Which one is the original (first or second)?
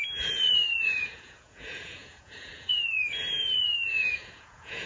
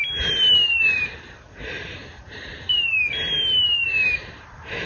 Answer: second